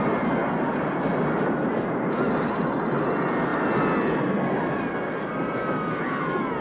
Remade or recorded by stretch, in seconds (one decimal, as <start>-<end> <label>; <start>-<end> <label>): 0.0-6.6 recorded